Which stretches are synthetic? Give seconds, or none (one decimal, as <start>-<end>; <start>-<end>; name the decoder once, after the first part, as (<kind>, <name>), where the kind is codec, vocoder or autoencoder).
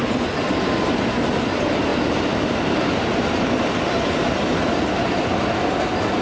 none